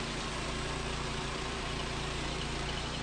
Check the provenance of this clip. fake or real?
fake